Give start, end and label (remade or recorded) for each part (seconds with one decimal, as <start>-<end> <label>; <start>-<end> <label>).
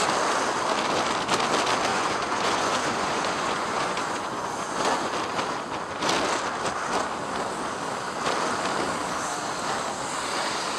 0.0-1.9 recorded; 1.9-5.1 remade; 5.1-10.8 recorded